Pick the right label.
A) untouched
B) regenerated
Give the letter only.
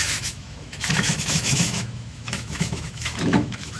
B